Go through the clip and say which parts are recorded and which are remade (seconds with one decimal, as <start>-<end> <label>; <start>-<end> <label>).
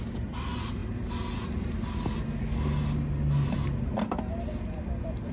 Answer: 0.0-5.3 recorded